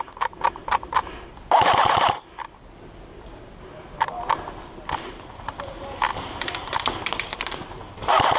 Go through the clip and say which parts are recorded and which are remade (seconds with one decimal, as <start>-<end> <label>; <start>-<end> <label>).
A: 0.0-0.6 recorded; 0.6-4.2 remade; 4.2-6.1 recorded; 6.1-7.0 remade; 7.0-8.4 recorded

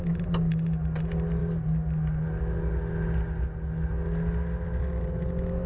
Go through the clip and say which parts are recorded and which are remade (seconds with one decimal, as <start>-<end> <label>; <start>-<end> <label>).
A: 0.0-5.7 recorded

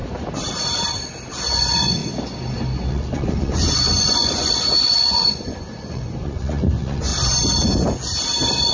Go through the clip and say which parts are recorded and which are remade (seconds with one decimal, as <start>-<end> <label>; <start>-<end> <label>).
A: 0.0-1.5 recorded; 1.5-2.0 remade; 2.0-2.9 recorded; 2.9-7.1 remade; 7.1-8.7 recorded

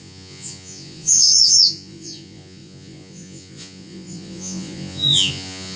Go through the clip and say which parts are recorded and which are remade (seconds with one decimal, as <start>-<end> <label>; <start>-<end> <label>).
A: 0.0-5.8 remade

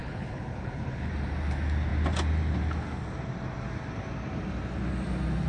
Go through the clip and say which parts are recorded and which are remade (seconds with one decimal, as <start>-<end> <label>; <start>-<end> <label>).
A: 0.0-1.1 remade; 1.1-5.5 recorded